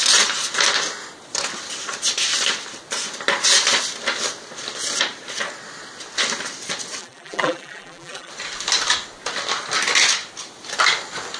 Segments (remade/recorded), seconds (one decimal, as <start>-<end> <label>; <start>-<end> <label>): 0.0-7.0 recorded; 7.0-8.3 remade; 8.3-11.4 recorded